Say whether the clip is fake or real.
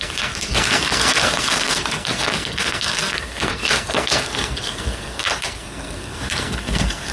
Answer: fake